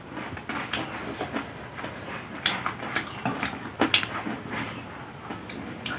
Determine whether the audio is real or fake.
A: real